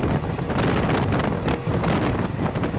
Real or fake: real